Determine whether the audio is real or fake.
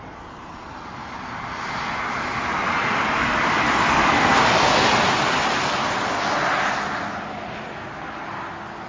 real